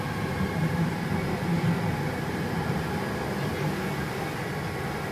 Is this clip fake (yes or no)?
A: no